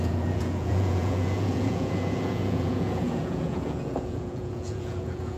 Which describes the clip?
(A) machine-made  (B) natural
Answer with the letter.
A